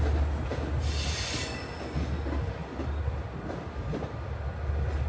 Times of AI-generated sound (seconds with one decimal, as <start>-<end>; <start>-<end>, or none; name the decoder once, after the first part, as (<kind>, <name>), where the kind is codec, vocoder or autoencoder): none